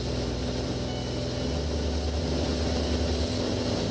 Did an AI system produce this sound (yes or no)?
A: no